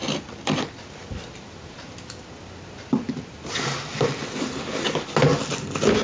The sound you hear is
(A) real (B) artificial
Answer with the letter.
A